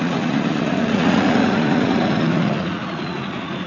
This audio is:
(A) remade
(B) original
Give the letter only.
A